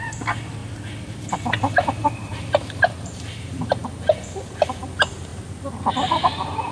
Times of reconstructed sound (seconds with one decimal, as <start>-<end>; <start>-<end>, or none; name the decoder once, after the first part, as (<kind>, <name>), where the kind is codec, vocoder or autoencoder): 2.3-2.9 (vocoder, BigVGAN v2)